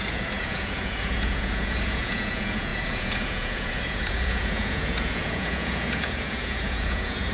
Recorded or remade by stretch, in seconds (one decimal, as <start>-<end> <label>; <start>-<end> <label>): 0.0-7.3 remade